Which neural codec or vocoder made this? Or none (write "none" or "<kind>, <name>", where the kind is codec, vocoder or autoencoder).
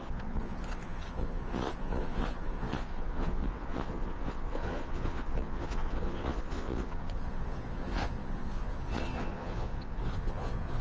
vocoder, Vocos